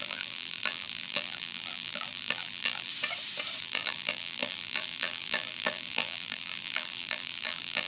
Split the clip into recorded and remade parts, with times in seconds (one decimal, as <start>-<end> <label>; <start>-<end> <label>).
0.0-2.9 remade; 2.9-3.6 recorded; 3.6-7.9 remade